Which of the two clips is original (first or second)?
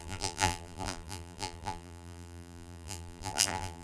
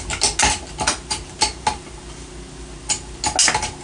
second